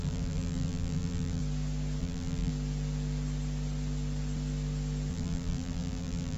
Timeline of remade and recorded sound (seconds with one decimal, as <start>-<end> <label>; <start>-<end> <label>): 0.0-1.4 remade; 1.4-2.0 recorded; 2.0-2.5 remade; 2.5-5.1 recorded; 5.1-6.4 remade